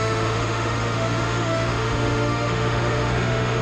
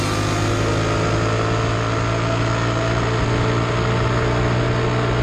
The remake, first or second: first